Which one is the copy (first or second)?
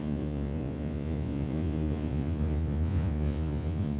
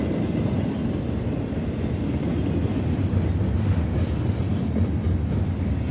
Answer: first